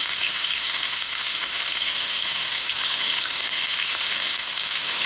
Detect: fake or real fake